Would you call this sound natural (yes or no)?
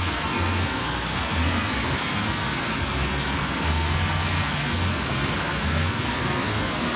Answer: no